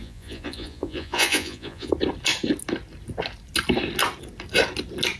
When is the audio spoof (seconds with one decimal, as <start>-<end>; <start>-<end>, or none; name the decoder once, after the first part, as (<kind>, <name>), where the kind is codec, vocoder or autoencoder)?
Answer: 0.0-1.9 (vocoder, Vocos)